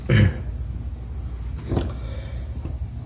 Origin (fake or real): real